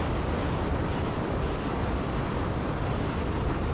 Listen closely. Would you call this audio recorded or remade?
recorded